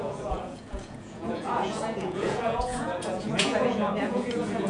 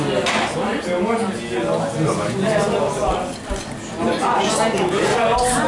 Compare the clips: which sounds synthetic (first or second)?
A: first